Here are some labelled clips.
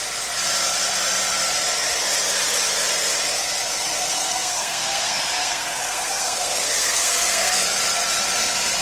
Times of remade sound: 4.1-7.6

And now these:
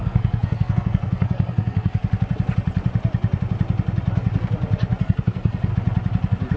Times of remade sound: 0.0-2.0; 5.0-5.7

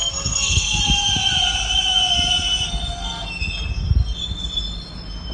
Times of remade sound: 0.0-0.8